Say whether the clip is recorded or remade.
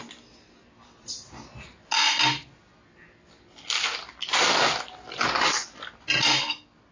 recorded